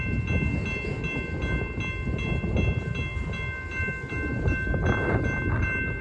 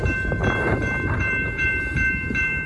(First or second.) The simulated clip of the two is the second